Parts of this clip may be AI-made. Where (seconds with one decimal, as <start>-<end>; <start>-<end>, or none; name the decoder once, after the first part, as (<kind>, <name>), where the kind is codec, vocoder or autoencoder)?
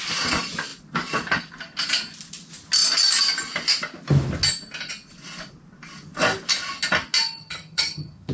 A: 7.4-8.3 (vocoder, HiFi-GAN)